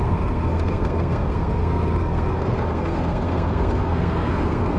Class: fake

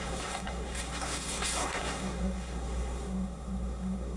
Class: fake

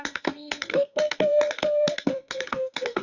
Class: fake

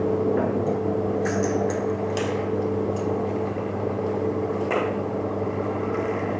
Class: real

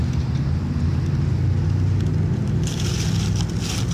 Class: real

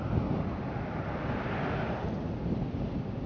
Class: real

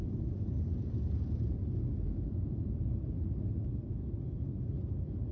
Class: real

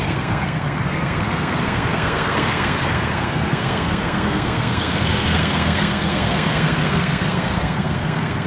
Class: fake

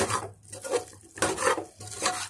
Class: real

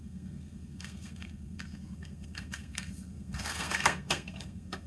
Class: fake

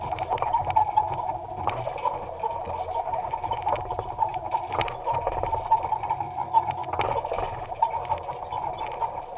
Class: real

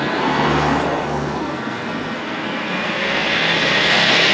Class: fake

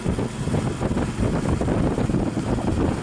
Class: real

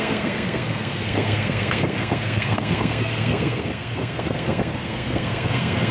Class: fake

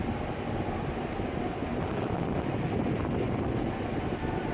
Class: real